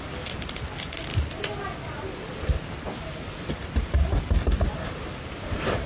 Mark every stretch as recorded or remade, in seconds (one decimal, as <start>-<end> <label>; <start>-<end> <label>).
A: 0.0-5.9 recorded